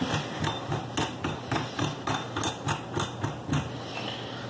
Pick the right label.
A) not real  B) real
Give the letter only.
B